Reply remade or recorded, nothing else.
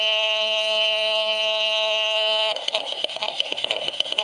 remade